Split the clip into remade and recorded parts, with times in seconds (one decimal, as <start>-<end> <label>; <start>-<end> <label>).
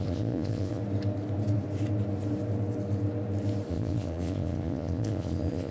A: 0.0-0.8 remade; 0.8-3.7 recorded; 3.7-5.7 remade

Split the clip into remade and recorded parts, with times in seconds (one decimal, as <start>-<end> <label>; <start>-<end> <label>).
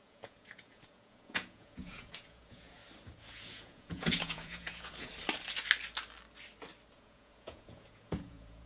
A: 0.0-2.8 remade; 2.8-3.3 recorded; 3.3-5.1 remade; 5.1-6.9 recorded; 6.9-8.7 remade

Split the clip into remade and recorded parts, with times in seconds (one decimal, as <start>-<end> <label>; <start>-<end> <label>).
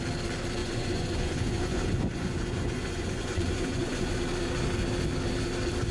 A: 0.0-0.6 recorded; 0.6-4.1 remade; 4.1-5.9 recorded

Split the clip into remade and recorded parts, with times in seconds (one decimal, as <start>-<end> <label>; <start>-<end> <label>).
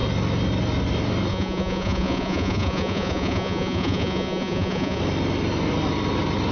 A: 0.0-1.3 recorded; 1.3-5.0 remade; 5.0-6.5 recorded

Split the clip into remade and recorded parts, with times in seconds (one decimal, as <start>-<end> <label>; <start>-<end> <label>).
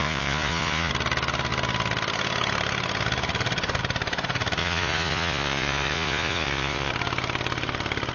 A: 0.0-0.9 remade; 0.9-4.6 recorded; 4.6-6.9 remade; 6.9-8.1 recorded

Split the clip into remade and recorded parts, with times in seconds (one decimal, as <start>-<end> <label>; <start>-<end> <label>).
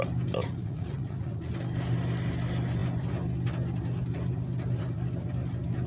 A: 0.0-0.4 recorded; 0.4-1.5 remade; 1.5-5.9 recorded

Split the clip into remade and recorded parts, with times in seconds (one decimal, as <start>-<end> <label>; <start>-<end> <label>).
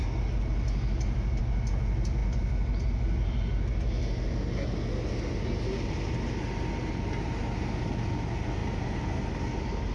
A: 0.0-9.9 recorded